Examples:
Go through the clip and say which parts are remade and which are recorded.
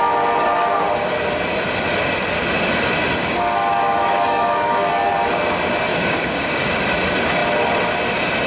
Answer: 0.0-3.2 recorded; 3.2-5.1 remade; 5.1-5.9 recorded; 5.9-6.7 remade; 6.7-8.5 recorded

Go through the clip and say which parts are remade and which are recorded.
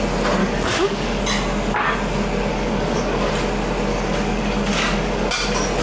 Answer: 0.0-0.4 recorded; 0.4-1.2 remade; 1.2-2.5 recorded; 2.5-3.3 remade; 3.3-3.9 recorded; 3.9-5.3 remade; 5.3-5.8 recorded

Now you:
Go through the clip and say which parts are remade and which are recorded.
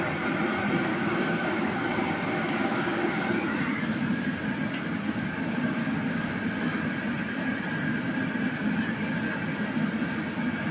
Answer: 0.0-0.9 recorded; 0.9-3.2 remade; 3.2-5.8 recorded; 5.8-6.4 remade; 6.4-10.7 recorded